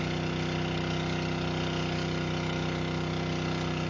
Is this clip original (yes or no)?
yes